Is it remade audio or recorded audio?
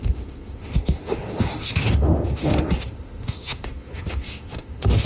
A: remade